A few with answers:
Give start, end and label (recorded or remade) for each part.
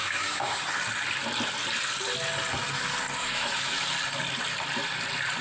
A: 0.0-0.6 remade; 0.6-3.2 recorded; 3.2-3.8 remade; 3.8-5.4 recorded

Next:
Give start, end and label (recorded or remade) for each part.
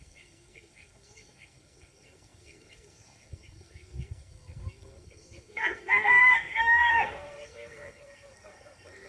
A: 0.0-9.1 remade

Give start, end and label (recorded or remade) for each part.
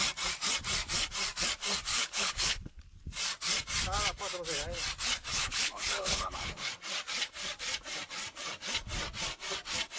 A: 0.0-1.9 recorded; 1.9-2.8 remade; 2.8-5.3 recorded; 5.3-6.7 remade; 6.7-10.0 recorded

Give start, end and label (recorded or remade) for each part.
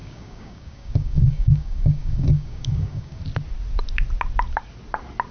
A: 0.0-3.2 remade; 3.2-5.3 recorded